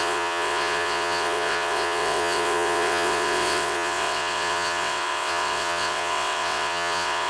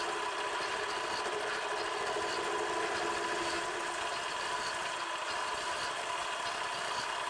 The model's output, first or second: first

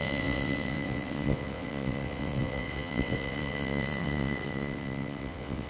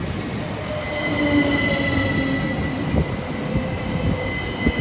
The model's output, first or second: first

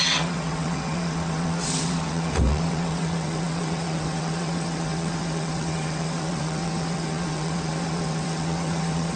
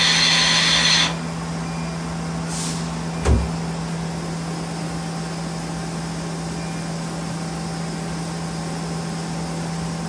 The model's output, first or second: first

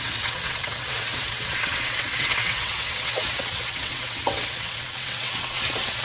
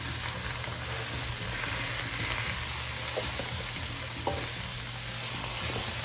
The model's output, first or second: first